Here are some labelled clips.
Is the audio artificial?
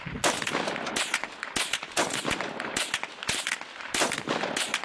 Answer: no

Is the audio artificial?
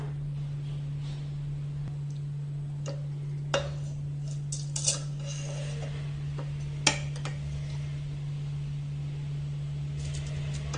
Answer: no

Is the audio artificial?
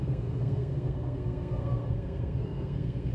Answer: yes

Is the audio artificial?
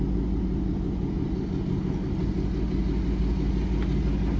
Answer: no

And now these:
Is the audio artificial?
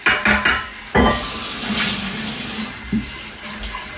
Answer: no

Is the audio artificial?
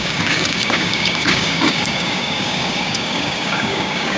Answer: yes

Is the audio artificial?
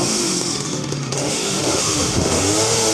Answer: yes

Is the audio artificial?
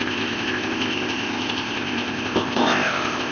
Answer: yes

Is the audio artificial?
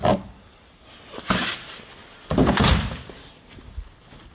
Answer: no